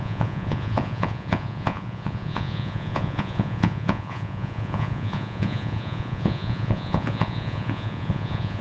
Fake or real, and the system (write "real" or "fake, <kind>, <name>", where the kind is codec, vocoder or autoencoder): fake, vocoder, Vocos